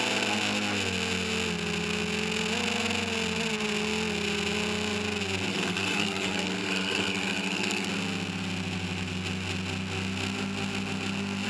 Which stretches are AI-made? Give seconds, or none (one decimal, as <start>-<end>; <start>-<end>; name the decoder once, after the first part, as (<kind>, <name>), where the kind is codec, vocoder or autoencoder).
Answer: 5.5-7.9 (codec, SNAC)

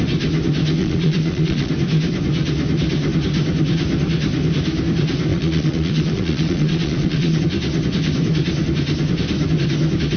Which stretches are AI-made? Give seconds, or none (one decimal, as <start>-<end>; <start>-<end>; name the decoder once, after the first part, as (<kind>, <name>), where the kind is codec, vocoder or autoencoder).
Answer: 0.8-1.7 (vocoder, Vocos); 5.3-7.4